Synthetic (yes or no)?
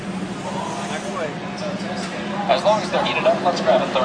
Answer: no